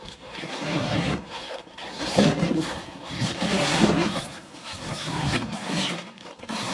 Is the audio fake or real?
fake